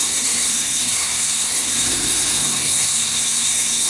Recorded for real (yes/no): no